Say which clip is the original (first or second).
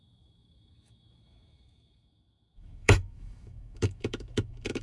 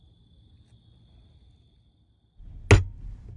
second